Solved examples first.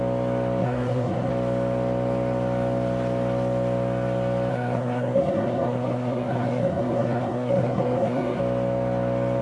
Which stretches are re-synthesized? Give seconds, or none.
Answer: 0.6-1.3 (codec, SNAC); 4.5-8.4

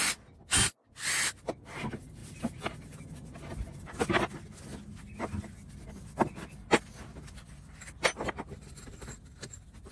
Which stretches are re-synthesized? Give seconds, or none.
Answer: none

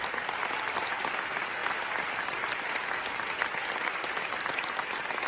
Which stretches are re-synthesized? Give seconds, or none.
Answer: none

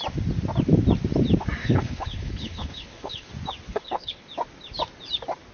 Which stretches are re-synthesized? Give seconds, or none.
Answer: 1.6-3.3 (codec, HILCodec); 3.7-4.3

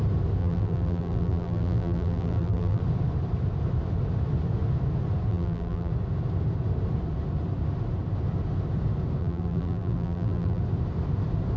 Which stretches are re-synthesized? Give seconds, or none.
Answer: 0.4-2.8 (vocoder, BigVGAN v2); 5.3-5.9; 9.2-10.6

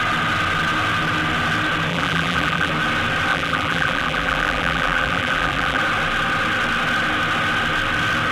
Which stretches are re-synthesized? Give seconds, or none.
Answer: 1.9-2.7 (vocoder, BigVGAN v2); 3.3-5.8

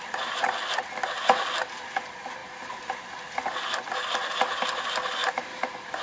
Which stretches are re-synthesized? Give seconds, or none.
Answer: 2.4-3.1 (vocoder, BigVGAN v2); 5.2-6.0

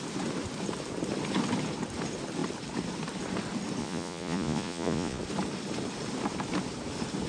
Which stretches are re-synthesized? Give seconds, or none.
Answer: 3.8-5.2 (vocoder, Vocos)